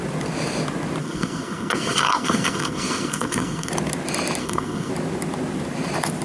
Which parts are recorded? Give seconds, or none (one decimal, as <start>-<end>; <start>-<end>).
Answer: 0.0-1.0; 3.7-4.4; 4.9-6.2